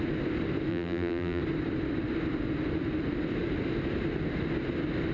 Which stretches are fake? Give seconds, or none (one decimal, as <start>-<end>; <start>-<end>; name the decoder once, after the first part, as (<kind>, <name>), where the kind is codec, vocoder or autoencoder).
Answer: 0.7-1.4 (vocoder, BigVGAN v2)